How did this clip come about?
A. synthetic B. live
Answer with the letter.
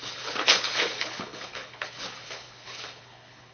A